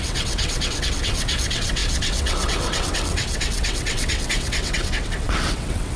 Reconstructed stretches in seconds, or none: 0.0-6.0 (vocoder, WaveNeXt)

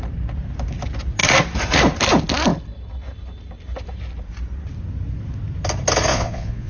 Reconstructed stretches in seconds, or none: 6.1-6.7 (vocoder, Vocos)

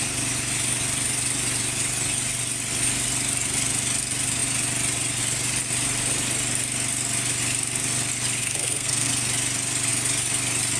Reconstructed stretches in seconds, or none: 8.4-9.1 (codec, SNAC)